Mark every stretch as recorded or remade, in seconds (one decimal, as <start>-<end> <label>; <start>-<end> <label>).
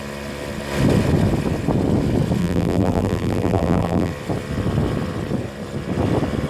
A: 0.0-2.4 recorded; 2.4-4.1 remade; 4.1-6.5 recorded